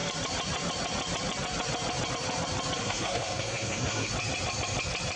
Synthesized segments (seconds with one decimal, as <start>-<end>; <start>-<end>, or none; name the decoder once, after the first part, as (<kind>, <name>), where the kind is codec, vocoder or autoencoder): 2.8-4.1 (codec, SNAC)